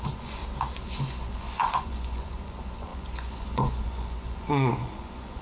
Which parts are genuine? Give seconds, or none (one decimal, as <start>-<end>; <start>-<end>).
0.4-1.0